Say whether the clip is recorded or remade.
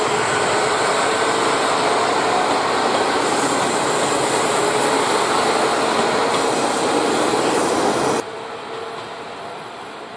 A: recorded